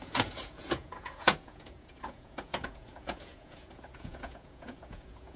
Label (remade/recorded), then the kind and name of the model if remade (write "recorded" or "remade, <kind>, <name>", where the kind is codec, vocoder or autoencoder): remade, vocoder, Vocos